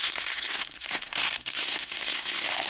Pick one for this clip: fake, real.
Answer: fake